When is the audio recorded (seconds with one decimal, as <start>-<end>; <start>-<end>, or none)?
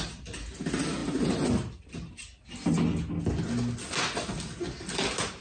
0.0-5.4